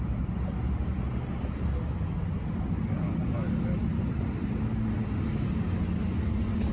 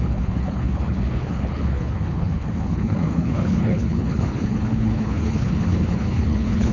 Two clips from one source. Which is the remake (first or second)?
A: second